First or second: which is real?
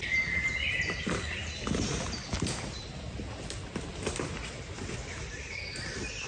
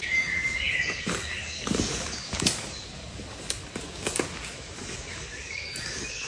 first